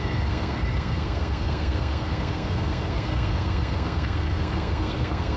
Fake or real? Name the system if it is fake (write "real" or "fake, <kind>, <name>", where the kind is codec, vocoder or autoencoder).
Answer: fake, codec, SNAC